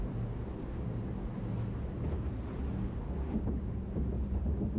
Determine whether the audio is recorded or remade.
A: recorded